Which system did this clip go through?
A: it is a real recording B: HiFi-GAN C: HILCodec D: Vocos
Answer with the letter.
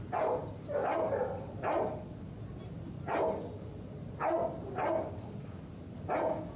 A